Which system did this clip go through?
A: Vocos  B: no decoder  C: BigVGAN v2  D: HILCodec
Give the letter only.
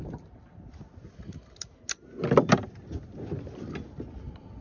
B